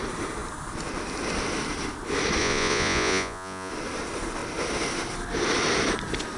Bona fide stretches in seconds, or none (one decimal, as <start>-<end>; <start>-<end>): 0.0-2.4; 3.7-6.4